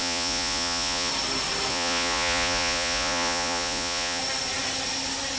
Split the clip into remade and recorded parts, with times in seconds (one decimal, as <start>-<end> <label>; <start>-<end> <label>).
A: 0.0-1.1 remade; 1.1-1.7 recorded; 1.7-4.2 remade; 4.2-5.4 recorded